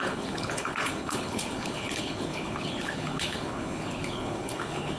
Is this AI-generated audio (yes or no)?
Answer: yes